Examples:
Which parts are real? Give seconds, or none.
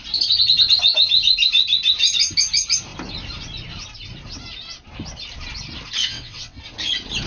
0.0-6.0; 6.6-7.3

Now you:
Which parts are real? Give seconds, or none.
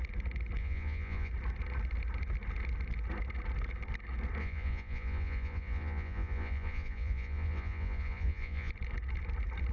0.0-0.6; 1.3-4.4; 8.7-9.7